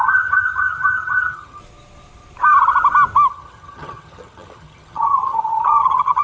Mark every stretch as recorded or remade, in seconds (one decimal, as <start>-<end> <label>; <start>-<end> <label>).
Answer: 0.0-1.6 remade; 1.6-3.3 recorded; 3.3-6.2 remade